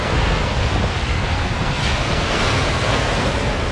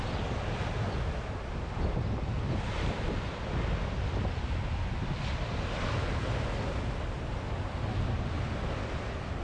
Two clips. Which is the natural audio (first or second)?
second